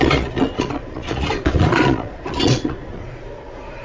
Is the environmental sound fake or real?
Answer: fake